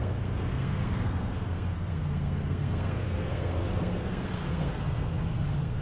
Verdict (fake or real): fake